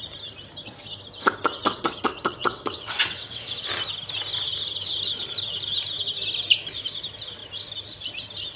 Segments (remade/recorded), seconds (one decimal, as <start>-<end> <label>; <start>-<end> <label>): 0.0-1.5 recorded; 1.5-3.6 remade; 3.6-8.6 recorded